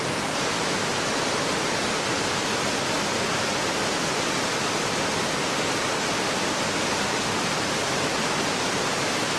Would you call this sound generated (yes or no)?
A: no